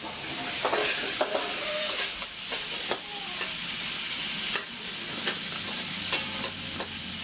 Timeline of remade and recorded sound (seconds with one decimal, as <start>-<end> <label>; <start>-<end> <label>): 0.0-0.8 recorded; 0.8-5.1 remade; 5.1-7.2 recorded